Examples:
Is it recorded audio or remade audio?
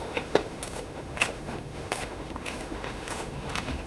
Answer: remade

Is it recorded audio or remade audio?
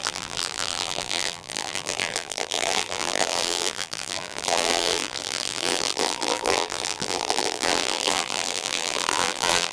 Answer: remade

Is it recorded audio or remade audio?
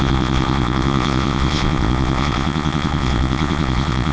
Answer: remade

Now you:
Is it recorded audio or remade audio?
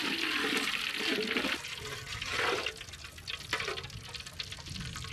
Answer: recorded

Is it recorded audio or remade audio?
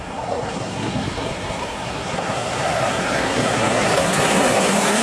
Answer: remade